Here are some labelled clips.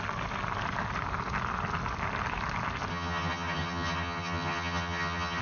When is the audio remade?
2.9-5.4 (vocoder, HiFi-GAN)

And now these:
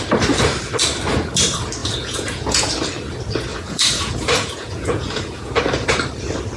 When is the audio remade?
1.8-2.7 (vocoder, Vocos); 3.5-5.6

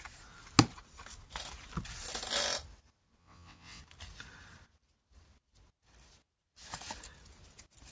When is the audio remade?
3.2-3.8 (vocoder, WaveNeXt)

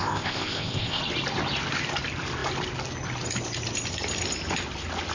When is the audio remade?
0.0-1.0 (codec, ZipCodec)

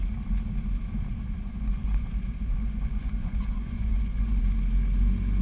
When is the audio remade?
1.5-4.4 (vocoder, Vocos)

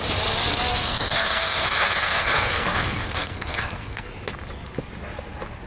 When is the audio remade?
0.7-4.1 (codec, SNAC)

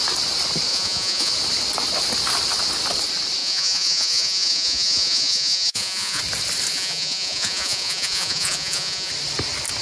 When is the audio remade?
0.7-1.3 (vocoder, Vocos); 3.4-6.2; 6.7-9.1